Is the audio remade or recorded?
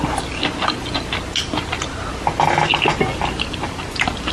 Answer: recorded